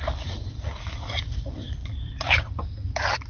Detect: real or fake real